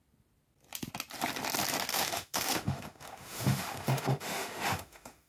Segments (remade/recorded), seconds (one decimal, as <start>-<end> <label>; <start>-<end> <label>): 0.0-1.9 recorded; 1.9-5.3 remade